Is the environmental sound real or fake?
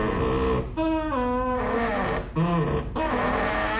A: real